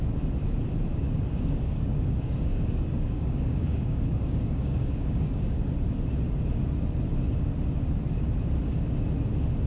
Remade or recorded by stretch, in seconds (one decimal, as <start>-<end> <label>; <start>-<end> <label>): 0.0-0.9 recorded; 0.9-5.7 remade; 5.7-9.7 recorded